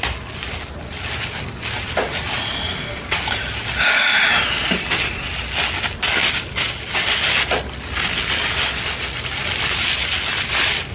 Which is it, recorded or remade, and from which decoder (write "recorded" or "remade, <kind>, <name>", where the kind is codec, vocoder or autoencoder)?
recorded